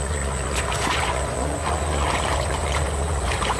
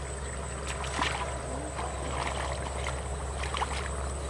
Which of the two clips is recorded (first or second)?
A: second